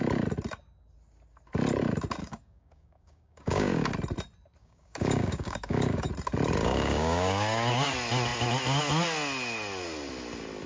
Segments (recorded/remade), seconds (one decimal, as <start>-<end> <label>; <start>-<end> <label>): 0.0-2.2 recorded; 2.2-3.9 remade; 3.9-4.6 recorded; 4.6-6.1 remade; 6.1-6.6 recorded; 6.6-7.9 remade; 7.9-10.7 recorded